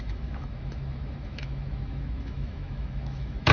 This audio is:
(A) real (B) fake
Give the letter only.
B